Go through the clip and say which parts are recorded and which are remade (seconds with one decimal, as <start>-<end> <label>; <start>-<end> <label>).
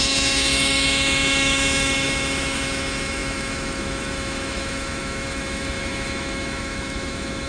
0.0-7.5 remade